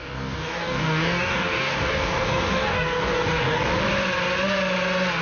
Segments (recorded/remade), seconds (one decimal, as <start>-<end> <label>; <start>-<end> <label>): 0.0-3.7 remade; 3.7-5.2 recorded